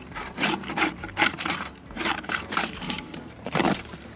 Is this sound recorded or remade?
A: remade